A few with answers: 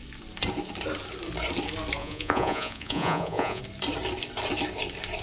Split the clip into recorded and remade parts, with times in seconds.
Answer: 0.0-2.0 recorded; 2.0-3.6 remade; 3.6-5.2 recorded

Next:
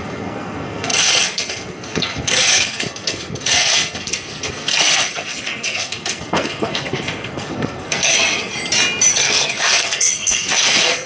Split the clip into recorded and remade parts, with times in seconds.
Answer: 0.0-8.5 remade; 8.5-9.1 recorded; 9.1-11.1 remade

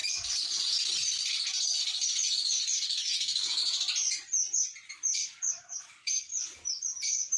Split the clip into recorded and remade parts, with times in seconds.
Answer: 0.0-1.8 recorded; 1.8-3.6 remade; 3.6-5.5 recorded; 5.5-6.3 remade; 6.3-7.4 recorded

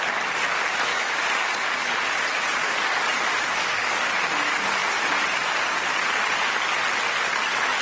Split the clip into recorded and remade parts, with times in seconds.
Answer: 0.0-0.9 recorded; 0.9-2.0 remade; 2.0-2.6 recorded; 2.6-4.1 remade; 4.1-7.8 recorded

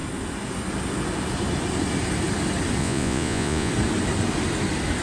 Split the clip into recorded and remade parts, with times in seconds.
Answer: 0.0-2.8 recorded; 2.8-3.7 remade; 3.7-5.0 recorded

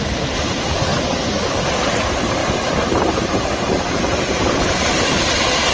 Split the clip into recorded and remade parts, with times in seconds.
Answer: 0.0-0.9 remade; 0.9-1.7 recorded; 1.7-5.7 remade